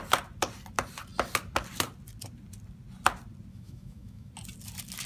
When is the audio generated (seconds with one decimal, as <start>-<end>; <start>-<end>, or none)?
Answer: 3.5-4.3